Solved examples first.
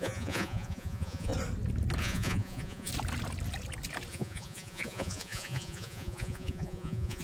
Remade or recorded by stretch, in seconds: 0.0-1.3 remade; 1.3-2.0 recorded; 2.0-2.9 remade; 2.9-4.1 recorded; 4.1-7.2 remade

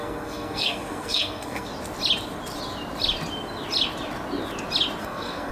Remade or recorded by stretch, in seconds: 0.0-1.7 remade; 1.7-5.0 recorded; 5.0-5.5 remade

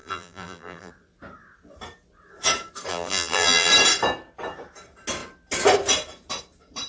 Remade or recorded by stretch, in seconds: 0.0-0.9 remade; 0.9-2.9 recorded; 2.9-3.7 remade; 3.7-6.9 recorded

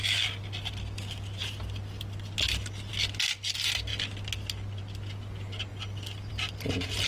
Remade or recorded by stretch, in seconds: 0.0-7.1 recorded

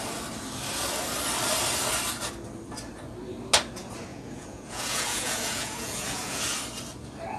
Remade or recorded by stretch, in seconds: 0.0-4.1 recorded; 4.1-6.4 remade; 6.4-7.4 recorded

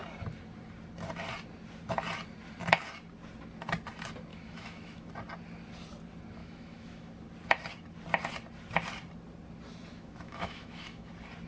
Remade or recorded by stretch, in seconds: 0.0-4.3 recorded; 4.3-5.1 remade; 5.1-6.4 recorded; 6.4-7.1 remade; 7.1-9.9 recorded; 9.9-11.1 remade; 11.1-11.5 recorded

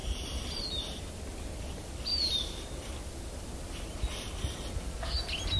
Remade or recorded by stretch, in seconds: 0.0-1.0 recorded; 1.0-2.1 remade; 2.1-5.6 recorded